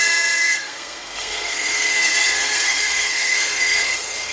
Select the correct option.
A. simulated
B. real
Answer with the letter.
A